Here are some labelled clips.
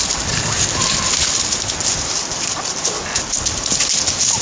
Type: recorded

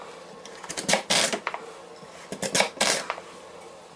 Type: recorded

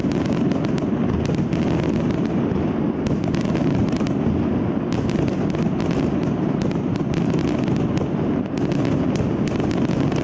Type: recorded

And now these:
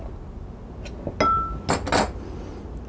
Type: recorded